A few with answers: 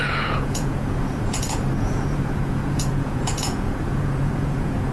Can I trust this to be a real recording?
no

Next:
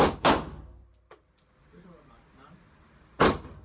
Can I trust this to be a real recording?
yes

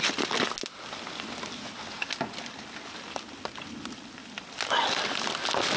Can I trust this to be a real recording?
yes